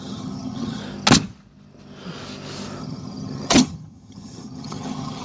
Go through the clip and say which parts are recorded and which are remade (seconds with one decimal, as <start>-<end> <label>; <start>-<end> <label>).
0.0-0.8 remade; 0.8-2.8 recorded; 2.8-5.2 remade